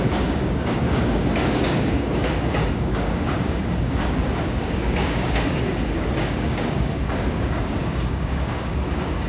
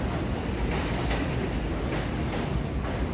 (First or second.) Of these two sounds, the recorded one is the second